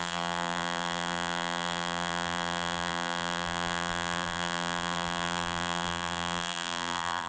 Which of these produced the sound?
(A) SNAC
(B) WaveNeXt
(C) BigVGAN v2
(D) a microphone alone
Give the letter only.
C